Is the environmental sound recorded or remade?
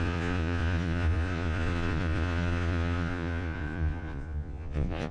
remade